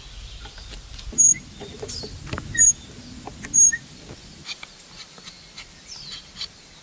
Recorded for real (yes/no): yes